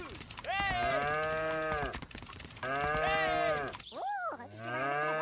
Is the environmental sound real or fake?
real